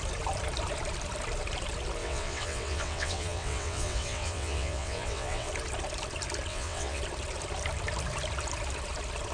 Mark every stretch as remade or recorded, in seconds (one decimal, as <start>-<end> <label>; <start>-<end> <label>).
0.0-2.0 recorded; 2.0-5.5 remade; 5.5-6.5 recorded; 6.5-7.0 remade; 7.0-9.3 recorded